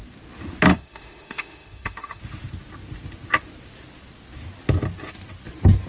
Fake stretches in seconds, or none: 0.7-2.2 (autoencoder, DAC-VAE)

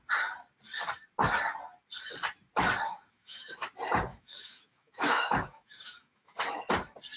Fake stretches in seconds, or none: 2.9-3.6 (autoencoder, DAC-VAE); 4.1-6.6

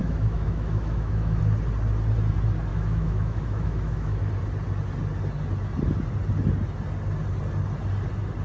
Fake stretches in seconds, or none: 0.0-1.4 (autoencoder, DAC-VAE); 2.7-4.3

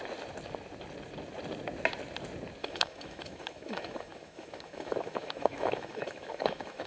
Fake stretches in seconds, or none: 2.6-6.9 (autoencoder, DAC-VAE)

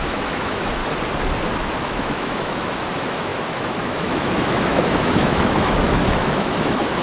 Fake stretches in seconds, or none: 0.0-0.8 (autoencoder, DAC-VAE); 1.6-7.0

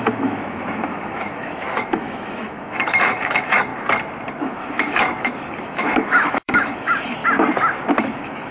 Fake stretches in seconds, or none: 0.0-3.7 (autoencoder, DAC-VAE); 4.4-7.2; 8.0-8.5

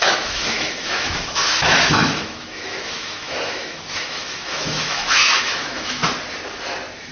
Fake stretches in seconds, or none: 0.0-6.0 (autoencoder, DAC-VAE)

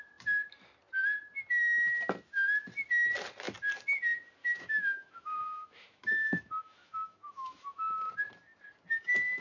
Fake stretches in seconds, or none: 4.4-8.1 (autoencoder, DAC-VAE)